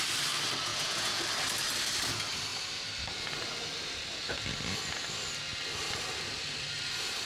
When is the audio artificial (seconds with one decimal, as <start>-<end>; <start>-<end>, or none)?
0.7-1.2